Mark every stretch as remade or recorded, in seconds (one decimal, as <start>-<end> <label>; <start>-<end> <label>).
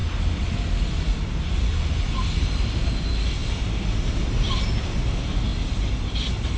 0.0-6.6 recorded